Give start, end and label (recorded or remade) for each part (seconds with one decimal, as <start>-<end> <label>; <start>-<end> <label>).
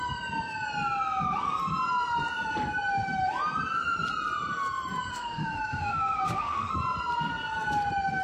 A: 0.0-5.1 recorded; 5.1-6.7 remade; 6.7-8.2 recorded